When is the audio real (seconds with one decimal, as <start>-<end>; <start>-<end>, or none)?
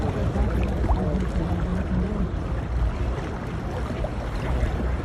0.0-1.7; 2.6-4.1